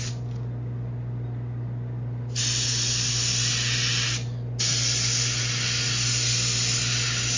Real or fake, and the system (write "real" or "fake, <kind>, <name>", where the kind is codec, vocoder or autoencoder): real